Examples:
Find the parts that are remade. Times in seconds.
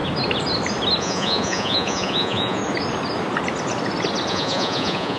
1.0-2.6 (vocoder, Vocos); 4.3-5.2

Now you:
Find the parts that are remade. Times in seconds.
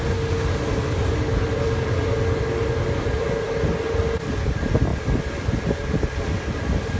none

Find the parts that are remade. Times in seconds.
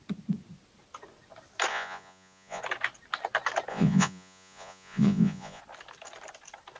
1.7-2.6 (vocoder, Vocos); 3.7-5.6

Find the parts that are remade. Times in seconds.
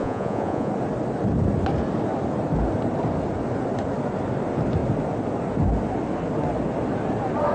0.0-0.7 (vocoder, Vocos)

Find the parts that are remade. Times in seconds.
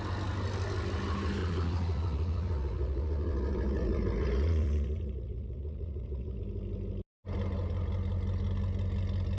1.4-6.4 (vocoder, Vocos)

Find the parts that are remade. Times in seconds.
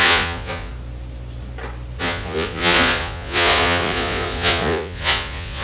0.0-0.7 (vocoder, Vocos); 2.0-5.6